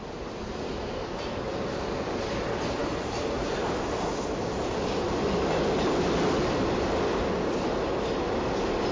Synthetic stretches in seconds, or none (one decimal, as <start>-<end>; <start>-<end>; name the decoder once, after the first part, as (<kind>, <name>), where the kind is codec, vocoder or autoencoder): none